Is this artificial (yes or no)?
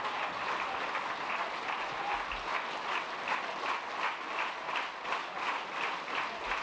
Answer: no